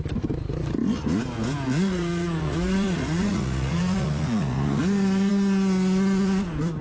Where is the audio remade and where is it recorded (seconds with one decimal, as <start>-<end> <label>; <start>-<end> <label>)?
0.0-1.7 recorded; 1.7-5.3 remade; 5.3-6.8 recorded